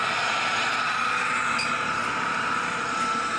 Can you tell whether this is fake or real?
fake